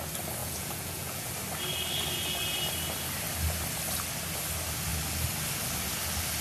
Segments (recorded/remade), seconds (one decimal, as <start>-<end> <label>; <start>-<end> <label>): 0.0-0.4 recorded; 0.4-1.3 remade; 1.3-6.4 recorded

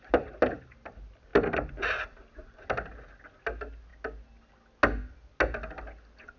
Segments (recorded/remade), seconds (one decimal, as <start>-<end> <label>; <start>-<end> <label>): 0.0-6.4 recorded

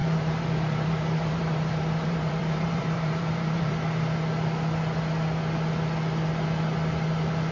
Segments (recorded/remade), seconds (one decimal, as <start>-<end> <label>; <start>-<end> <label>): 0.0-3.7 remade; 3.7-7.5 recorded

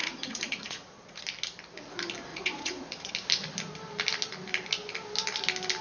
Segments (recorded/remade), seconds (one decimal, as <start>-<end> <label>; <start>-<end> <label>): 0.0-1.2 remade; 1.2-2.3 recorded; 2.3-3.1 remade; 3.1-5.8 recorded

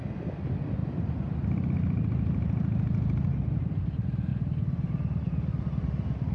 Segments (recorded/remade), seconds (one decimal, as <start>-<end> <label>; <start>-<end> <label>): 0.0-6.3 recorded

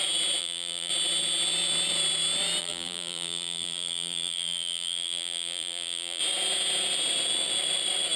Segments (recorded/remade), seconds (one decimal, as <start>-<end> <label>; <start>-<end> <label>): 0.0-0.4 recorded; 0.4-0.9 remade; 0.9-2.6 recorded; 2.6-6.2 remade; 6.2-8.2 recorded

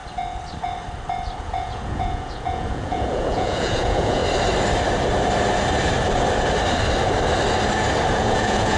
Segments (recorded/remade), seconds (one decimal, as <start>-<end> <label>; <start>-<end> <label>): 0.0-1.4 recorded; 1.4-4.2 remade; 4.2-8.1 recorded; 8.1-8.8 remade